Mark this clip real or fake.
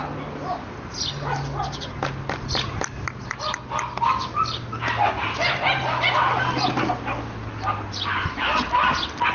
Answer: real